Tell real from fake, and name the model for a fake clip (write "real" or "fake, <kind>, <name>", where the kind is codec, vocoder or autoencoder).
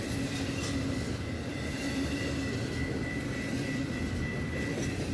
fake, vocoder, BigVGAN v2